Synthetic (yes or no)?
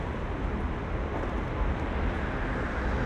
no